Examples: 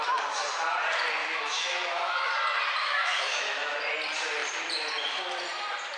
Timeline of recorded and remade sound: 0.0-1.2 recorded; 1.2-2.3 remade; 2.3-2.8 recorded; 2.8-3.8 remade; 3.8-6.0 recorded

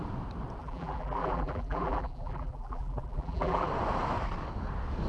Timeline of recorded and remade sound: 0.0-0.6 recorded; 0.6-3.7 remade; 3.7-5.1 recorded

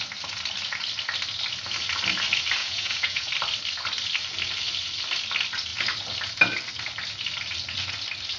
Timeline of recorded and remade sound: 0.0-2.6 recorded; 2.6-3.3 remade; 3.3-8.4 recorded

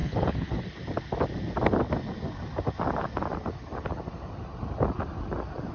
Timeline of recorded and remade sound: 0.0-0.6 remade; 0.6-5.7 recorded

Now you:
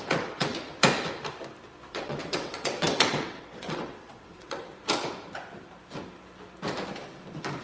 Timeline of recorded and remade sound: 0.0-0.5 remade; 0.5-1.9 recorded; 1.9-4.7 remade; 4.7-7.6 recorded

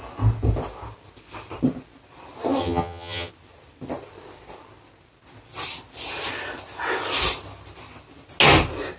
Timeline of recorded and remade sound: 0.0-2.6 recorded; 2.6-3.3 remade; 3.3-9.0 recorded